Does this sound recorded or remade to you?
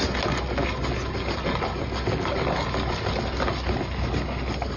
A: recorded